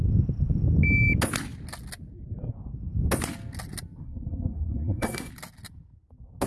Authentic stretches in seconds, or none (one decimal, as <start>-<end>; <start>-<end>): 0.0-4.0; 5.3-6.5